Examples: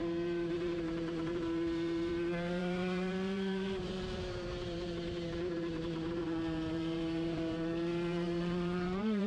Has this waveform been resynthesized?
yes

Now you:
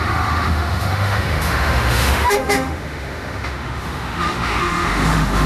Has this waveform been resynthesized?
yes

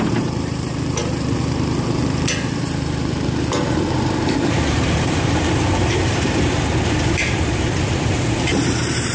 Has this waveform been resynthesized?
yes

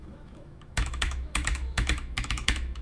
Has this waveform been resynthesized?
yes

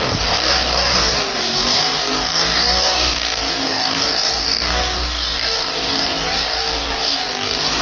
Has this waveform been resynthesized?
yes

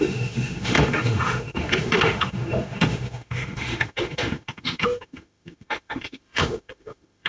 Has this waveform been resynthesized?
yes